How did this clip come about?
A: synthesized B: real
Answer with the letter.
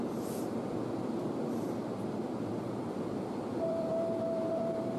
A